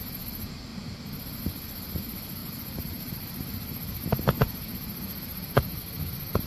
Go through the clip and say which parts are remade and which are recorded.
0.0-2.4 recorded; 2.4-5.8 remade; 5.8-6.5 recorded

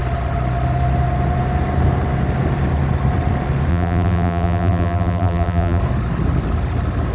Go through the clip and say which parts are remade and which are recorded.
0.0-3.7 recorded; 3.7-5.8 remade; 5.8-7.1 recorded

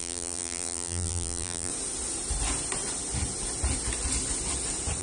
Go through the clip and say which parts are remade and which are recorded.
0.0-1.7 remade; 1.7-5.0 recorded

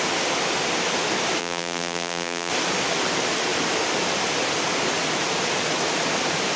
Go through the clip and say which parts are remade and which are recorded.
0.0-1.4 recorded; 1.4-2.5 remade; 2.5-6.6 recorded

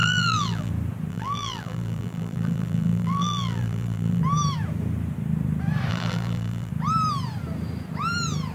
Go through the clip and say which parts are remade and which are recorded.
0.0-0.7 remade; 0.7-1.1 recorded; 1.1-4.2 remade; 4.2-5.9 recorded; 5.9-6.7 remade; 6.7-8.5 recorded